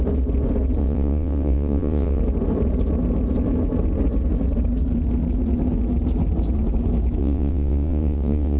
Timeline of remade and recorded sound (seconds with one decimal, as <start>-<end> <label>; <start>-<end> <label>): 0.0-0.8 recorded; 0.8-2.2 remade; 2.2-7.2 recorded; 7.2-8.6 remade